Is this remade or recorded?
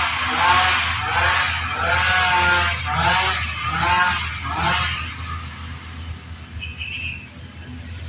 recorded